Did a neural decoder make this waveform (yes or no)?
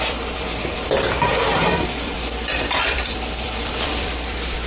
yes